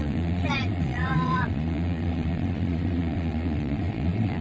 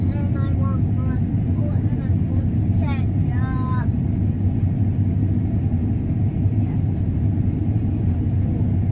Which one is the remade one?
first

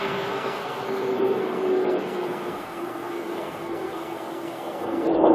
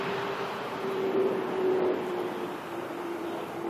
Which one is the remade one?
first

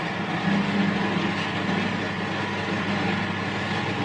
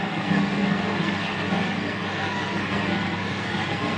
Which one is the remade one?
second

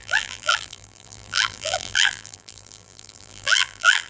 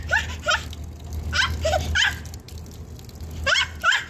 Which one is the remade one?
first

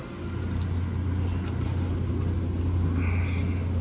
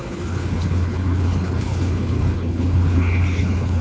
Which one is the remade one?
second